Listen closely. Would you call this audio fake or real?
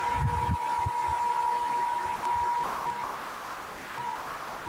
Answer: real